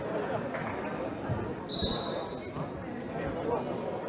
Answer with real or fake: real